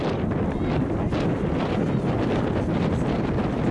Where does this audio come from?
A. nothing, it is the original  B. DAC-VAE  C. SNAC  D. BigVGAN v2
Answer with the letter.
A